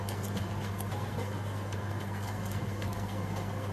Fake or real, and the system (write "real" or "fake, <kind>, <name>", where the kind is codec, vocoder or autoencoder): fake, codec, SNAC